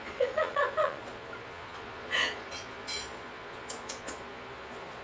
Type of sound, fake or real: fake